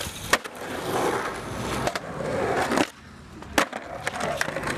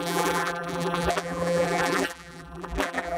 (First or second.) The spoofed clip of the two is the second